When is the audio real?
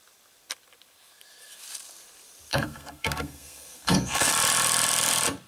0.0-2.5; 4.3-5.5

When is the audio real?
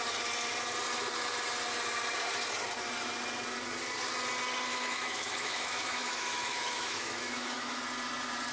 0.0-4.7; 7.8-8.5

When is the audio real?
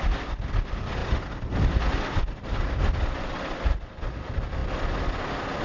0.0-5.6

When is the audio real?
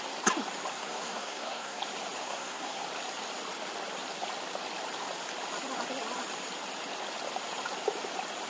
0.0-0.7; 1.8-2.2; 2.8-8.5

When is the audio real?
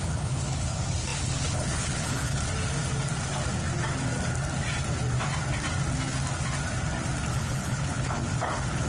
2.4-7.3